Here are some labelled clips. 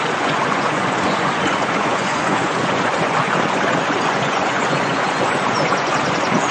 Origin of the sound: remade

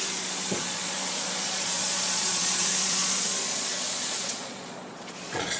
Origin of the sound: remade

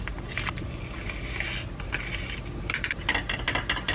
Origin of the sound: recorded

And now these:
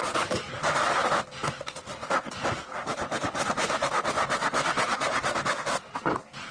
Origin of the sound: recorded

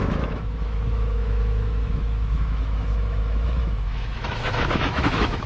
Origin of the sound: remade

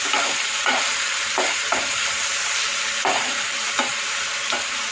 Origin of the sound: remade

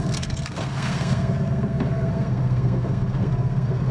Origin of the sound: remade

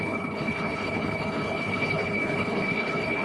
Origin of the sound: remade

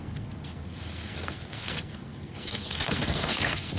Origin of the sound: remade